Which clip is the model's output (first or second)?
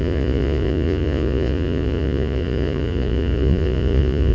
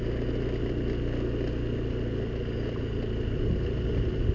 first